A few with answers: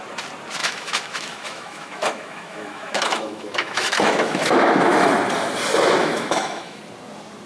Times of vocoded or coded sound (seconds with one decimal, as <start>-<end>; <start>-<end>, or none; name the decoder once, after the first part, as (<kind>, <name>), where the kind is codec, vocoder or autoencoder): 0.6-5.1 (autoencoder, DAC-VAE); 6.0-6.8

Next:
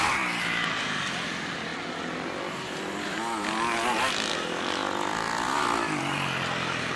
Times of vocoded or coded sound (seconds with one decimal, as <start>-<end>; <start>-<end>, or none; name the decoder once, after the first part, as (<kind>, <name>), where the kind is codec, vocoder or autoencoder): none

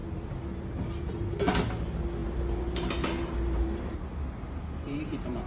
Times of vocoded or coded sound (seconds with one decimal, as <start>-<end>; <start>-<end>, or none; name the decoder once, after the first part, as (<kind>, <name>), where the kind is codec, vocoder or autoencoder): 0.0-1.8 (vocoder, BigVGAN v2); 2.2-5.5

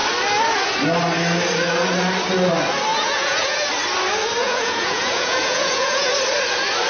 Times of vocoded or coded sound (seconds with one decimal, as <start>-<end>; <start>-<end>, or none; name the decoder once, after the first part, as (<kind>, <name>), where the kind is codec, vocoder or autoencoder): 2.9-3.7 (vocoder, Vocos); 4.4-6.1

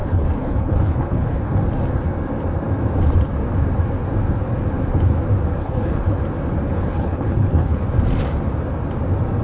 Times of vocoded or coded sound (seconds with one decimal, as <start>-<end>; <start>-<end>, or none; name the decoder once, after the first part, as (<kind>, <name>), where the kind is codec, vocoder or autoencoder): 0.0-1.6 (codec, HILCodec); 5.6-6.2; 6.7-7.8

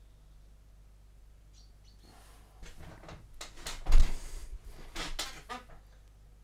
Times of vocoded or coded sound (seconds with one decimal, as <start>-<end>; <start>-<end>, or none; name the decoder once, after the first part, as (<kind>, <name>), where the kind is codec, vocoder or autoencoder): none

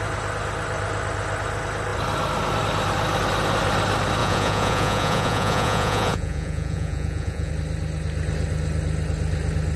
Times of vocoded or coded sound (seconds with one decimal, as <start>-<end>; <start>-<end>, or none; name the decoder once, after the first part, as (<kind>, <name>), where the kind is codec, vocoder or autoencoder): 4.2-7.5 (vocoder, Vocos)